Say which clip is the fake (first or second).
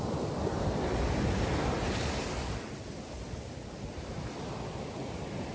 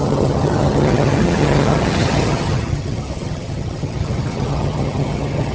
second